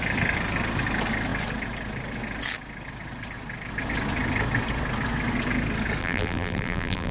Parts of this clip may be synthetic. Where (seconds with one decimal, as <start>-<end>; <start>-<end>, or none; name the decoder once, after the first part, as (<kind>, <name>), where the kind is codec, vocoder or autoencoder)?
6.0-7.1 (vocoder, BigVGAN v2)